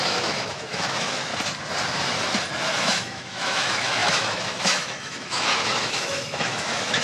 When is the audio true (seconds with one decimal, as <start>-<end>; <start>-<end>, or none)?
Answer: 1.3-2.5